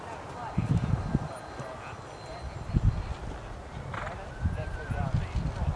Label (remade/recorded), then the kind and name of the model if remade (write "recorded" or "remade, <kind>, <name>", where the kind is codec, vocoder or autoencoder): recorded